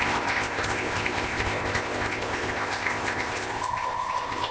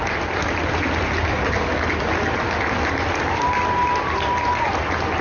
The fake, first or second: first